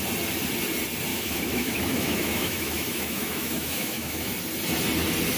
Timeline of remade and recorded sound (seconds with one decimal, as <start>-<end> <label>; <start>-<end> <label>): 0.0-1.1 recorded; 1.1-4.3 remade; 4.3-5.4 recorded